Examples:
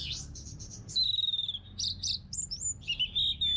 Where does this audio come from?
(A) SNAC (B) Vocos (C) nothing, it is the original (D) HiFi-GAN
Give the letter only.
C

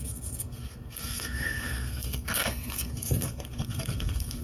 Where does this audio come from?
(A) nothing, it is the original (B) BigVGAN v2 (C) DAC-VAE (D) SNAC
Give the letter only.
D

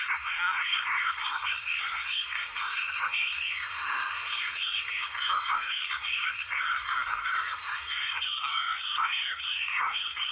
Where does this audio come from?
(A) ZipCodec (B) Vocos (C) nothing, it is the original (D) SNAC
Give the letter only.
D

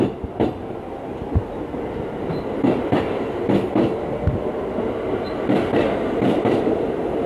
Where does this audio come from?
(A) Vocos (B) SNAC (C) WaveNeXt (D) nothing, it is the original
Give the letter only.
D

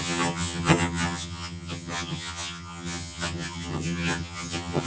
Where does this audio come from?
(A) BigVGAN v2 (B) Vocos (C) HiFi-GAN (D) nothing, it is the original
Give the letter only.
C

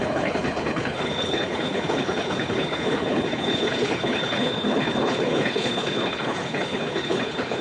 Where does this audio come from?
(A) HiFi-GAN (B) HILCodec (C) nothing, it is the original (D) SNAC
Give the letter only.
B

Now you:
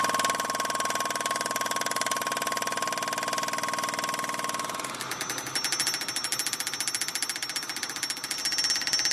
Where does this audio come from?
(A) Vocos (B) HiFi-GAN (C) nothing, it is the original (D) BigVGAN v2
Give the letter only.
C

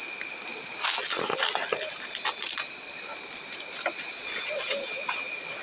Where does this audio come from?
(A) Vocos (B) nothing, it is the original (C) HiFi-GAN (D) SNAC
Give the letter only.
B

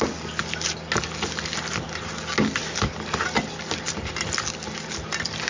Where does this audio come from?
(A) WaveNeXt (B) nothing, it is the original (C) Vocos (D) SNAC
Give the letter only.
B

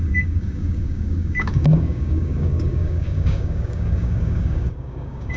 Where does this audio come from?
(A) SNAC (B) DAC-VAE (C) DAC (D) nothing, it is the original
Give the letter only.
C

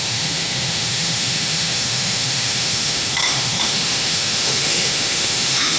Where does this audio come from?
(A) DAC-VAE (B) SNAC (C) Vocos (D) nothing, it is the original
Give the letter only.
A